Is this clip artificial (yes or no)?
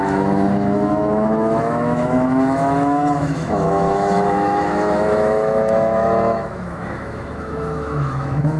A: yes